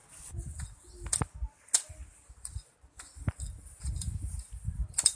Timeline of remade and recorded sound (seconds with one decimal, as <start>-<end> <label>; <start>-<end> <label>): 0.0-5.2 recorded